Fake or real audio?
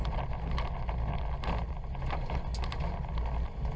real